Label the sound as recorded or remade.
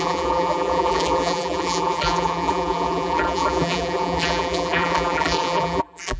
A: remade